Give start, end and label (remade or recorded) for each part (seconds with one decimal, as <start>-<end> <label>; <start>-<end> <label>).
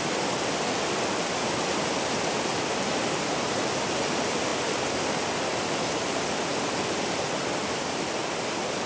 0.0-2.5 recorded; 2.5-3.8 remade; 3.8-8.9 recorded